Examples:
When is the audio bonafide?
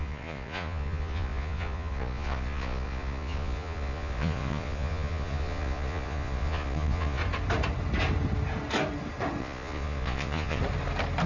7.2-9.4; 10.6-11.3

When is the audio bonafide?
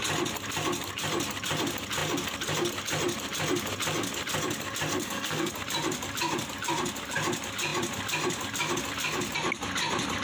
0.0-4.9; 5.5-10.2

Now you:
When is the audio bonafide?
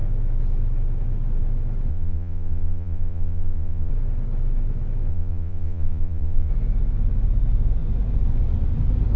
0.0-1.9; 3.9-5.1; 6.5-9.2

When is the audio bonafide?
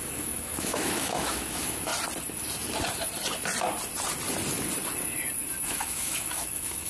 1.9-5.7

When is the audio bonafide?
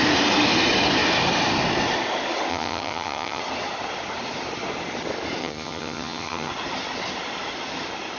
0.0-2.5; 3.4-5.4; 6.5-8.2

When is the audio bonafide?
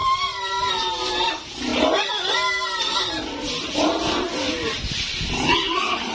0.0-6.1